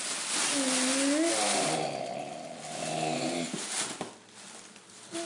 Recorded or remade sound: recorded